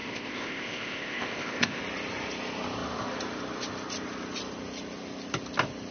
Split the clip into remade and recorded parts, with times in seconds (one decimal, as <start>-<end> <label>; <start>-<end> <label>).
0.0-1.8 remade; 1.8-5.9 recorded